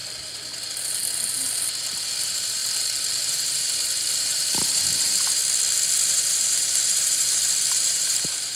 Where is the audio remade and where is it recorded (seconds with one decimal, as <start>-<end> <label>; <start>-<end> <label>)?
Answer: 0.0-2.2 recorded; 2.2-2.6 remade; 2.6-3.2 recorded; 3.2-5.4 remade; 5.4-6.0 recorded; 6.0-8.6 remade